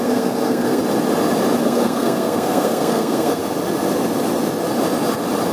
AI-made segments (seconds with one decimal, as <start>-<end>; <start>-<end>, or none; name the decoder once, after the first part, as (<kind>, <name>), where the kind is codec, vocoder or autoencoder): 0.0-0.8 (codec, SNAC); 1.6-3.4

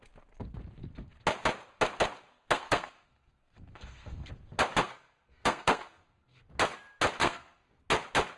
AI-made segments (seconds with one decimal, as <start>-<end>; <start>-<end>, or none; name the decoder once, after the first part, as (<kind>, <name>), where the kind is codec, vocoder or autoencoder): 2.3-4.3 (codec, SNAC); 4.8-6.4; 7.2-7.7

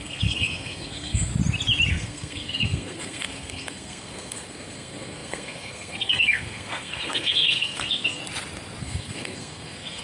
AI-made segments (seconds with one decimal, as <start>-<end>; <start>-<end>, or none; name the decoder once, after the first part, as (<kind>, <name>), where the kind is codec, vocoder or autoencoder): 0.0-1.3 (codec, SNAC); 1.9-8.2; 8.8-10.0

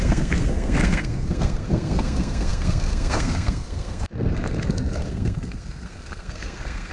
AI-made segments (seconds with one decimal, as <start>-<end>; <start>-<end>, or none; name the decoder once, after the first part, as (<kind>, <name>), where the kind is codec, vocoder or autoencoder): 0.0-6.9 (codec, SNAC)

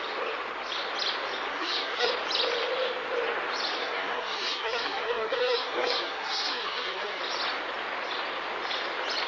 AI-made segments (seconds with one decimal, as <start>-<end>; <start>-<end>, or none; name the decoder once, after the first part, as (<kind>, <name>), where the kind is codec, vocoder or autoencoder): 1.5-2.1 (codec, SNAC); 3.8-7.2